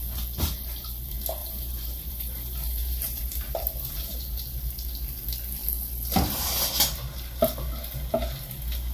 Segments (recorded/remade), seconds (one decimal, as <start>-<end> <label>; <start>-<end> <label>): 0.0-1.4 recorded; 1.4-4.2 remade; 4.2-8.9 recorded